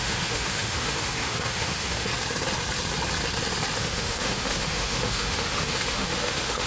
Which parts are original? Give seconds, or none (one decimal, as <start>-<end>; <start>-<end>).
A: 2.1-3.8